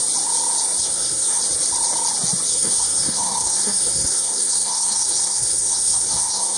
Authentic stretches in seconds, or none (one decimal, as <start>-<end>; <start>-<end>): 0.0-0.8; 1.4-2.5